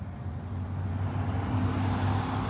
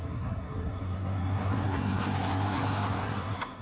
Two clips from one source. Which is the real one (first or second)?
first